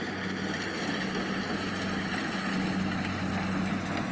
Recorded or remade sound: recorded